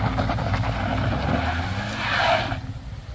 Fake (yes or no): no